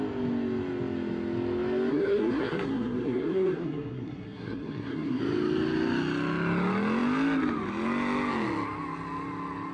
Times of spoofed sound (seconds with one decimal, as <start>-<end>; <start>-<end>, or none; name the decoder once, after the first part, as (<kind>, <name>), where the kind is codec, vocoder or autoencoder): 1.9-5.2 (codec, SNAC)